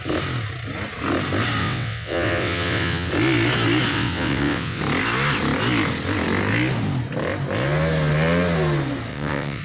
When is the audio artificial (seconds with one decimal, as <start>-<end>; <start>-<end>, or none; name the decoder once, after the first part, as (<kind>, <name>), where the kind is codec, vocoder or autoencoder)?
1.6-3.1 (vocoder, WaveNeXt); 3.9-4.8; 9.1-9.6